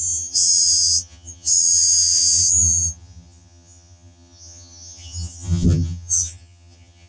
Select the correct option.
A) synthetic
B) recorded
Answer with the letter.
A